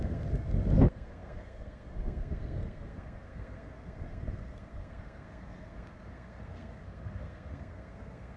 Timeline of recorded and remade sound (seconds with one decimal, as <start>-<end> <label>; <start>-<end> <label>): 0.0-8.4 remade